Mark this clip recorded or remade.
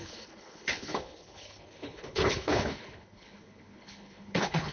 remade